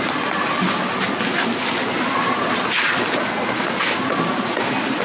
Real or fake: real